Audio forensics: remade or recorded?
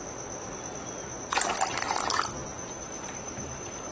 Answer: recorded